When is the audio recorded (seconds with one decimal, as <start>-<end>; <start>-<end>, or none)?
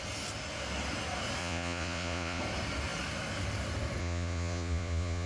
0.0-1.4; 2.4-4.0